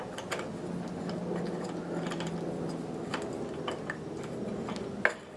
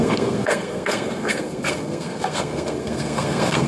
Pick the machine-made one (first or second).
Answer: second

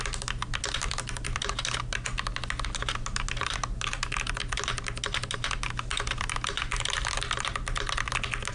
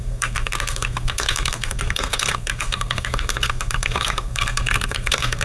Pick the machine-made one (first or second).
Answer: second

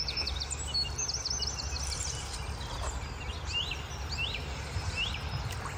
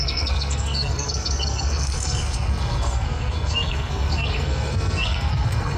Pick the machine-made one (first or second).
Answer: second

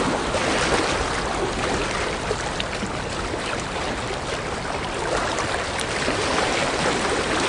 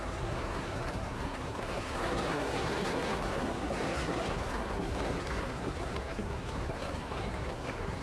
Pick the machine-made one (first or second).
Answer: second